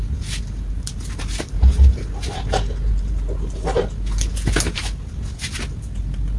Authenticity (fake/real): real